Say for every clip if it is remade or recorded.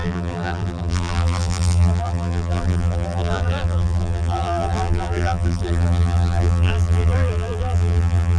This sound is remade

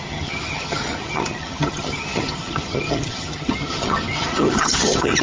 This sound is remade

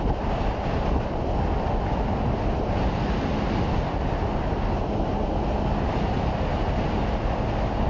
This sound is recorded